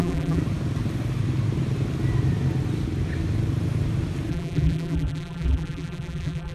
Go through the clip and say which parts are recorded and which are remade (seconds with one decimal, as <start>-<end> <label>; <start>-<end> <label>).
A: 0.0-0.4 remade; 0.4-4.3 recorded; 4.3-6.5 remade